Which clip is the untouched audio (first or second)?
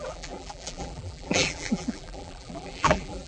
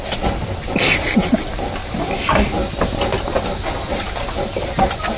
second